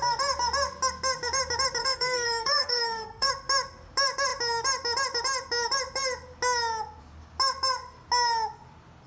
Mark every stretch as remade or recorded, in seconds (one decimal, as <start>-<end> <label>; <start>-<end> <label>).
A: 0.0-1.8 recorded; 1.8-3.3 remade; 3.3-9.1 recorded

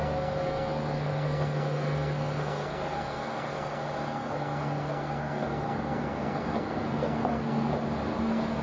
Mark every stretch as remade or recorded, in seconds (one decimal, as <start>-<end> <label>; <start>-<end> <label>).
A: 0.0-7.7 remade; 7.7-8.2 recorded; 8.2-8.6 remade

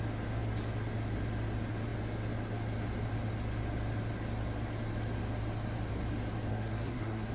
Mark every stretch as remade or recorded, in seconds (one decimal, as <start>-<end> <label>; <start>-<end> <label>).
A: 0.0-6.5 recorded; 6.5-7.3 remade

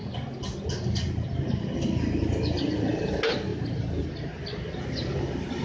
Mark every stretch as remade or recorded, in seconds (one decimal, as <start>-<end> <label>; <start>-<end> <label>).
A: 0.0-3.5 recorded; 3.5-4.4 remade; 4.4-5.6 recorded

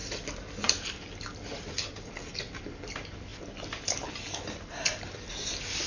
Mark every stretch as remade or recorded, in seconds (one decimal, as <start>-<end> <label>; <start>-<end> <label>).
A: 0.0-5.9 recorded

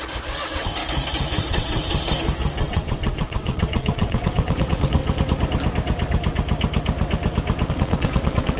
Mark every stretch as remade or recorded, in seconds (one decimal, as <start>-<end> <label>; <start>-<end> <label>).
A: 0.0-0.8 remade; 0.8-1.3 recorded; 1.3-1.9 remade; 1.9-2.6 recorded; 2.6-5.0 remade; 5.0-7.7 recorded; 7.7-8.6 remade